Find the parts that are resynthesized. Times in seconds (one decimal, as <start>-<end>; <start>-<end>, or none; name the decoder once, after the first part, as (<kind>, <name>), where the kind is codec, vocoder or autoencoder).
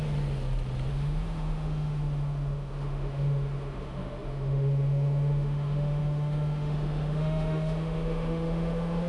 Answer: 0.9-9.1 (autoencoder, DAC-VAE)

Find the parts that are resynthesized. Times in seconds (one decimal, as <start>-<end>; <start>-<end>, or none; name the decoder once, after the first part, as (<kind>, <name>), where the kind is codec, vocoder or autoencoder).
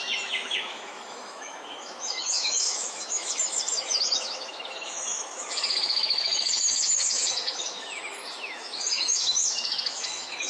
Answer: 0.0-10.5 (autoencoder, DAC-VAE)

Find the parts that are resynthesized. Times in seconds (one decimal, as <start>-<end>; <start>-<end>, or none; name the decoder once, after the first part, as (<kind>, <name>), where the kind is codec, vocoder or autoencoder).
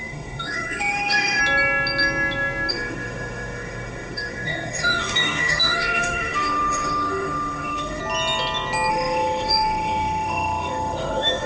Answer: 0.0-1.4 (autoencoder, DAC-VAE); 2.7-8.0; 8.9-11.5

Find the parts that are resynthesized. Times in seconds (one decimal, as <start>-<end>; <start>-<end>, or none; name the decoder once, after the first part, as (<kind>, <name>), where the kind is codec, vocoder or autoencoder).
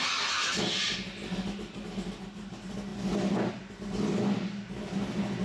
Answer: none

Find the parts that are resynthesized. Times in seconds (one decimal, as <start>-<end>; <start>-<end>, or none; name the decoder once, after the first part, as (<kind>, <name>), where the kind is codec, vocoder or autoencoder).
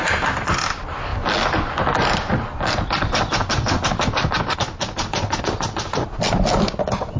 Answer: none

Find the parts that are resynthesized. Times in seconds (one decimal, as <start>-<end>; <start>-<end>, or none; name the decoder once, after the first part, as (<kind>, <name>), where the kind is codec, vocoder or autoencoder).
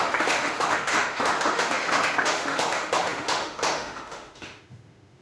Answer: 0.0-5.2 (autoencoder, DAC-VAE)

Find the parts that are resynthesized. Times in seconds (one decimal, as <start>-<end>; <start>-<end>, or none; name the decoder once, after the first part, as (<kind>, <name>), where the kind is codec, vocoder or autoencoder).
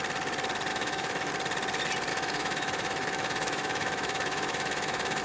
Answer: 0.7-1.3 (autoencoder, DAC-VAE); 2.1-5.2